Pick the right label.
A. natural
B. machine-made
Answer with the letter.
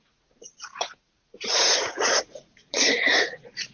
B